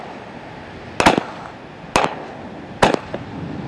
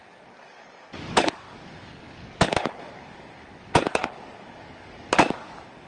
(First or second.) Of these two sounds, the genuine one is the first